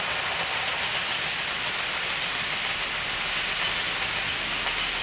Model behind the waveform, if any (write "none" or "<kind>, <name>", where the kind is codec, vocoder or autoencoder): none